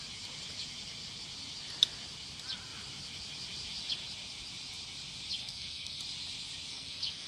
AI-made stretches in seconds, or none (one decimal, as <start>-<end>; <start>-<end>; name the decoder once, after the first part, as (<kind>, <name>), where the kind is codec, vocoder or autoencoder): 5.4-6.0 (codec, SNAC); 6.7-7.3